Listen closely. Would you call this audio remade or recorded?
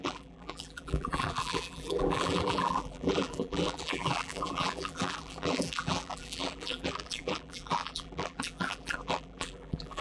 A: remade